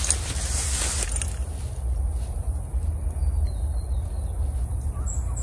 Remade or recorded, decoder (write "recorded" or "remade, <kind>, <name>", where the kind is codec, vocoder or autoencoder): recorded